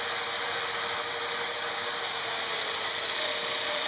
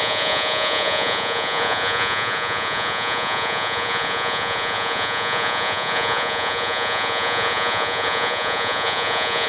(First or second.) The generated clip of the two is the second